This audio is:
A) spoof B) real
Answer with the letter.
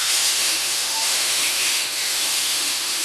A